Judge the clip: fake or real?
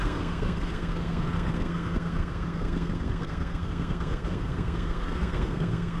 fake